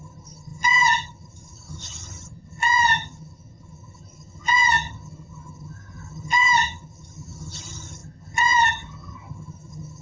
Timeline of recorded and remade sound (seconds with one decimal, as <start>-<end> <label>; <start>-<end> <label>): 0.0-10.0 remade